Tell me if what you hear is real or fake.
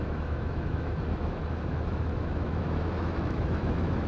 fake